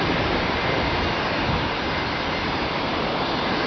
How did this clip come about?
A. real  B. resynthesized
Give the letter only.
A